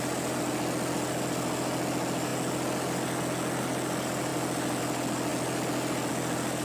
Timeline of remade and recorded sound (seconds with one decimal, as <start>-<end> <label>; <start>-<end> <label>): 0.0-6.6 recorded